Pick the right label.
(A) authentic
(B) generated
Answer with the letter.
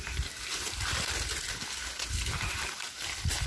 A